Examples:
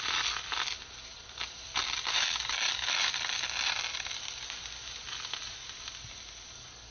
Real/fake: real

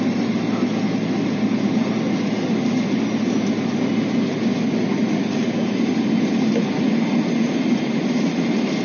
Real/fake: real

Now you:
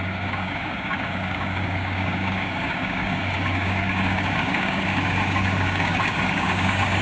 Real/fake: fake